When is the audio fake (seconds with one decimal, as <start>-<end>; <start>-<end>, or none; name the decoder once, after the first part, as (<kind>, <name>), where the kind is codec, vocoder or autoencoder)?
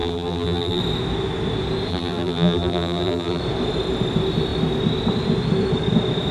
0.0-0.8 (vocoder, BigVGAN v2); 1.9-3.4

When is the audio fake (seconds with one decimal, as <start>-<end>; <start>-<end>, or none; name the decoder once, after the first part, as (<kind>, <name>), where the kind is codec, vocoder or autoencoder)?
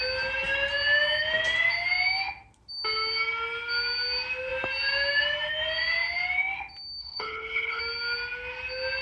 7.0-7.8 (codec, HILCodec)